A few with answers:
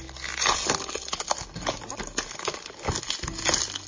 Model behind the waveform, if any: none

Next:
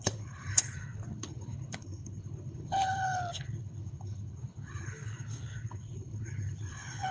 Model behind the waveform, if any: codec, HILCodec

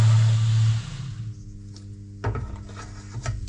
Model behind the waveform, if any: none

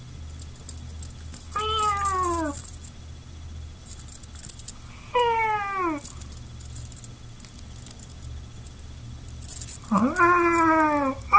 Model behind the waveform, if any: none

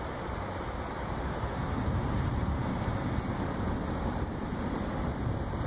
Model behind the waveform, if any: vocoder, BigVGAN v2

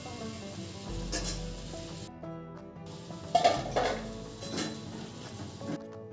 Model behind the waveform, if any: none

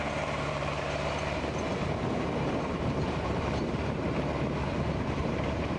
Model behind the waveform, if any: vocoder, BigVGAN v2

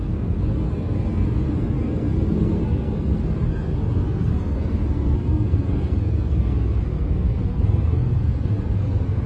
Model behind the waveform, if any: codec, SNAC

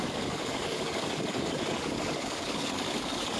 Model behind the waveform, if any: codec, DAC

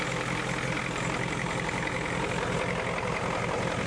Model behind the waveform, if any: none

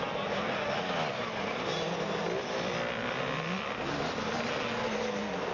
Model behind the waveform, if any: none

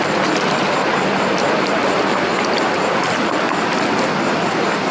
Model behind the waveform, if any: none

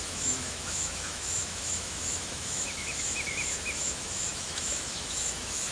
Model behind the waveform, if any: autoencoder, DAC-VAE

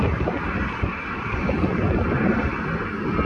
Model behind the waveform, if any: none